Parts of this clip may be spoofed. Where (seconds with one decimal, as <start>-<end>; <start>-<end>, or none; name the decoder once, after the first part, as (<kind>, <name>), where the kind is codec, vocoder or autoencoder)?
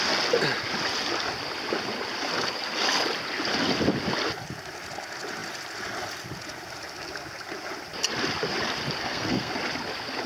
9.0-9.5 (codec, SNAC)